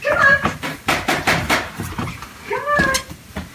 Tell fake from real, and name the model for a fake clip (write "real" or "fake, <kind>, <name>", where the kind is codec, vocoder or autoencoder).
fake, vocoder, BigVGAN v2